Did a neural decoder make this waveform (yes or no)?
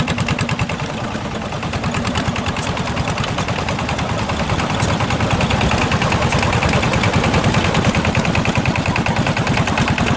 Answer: yes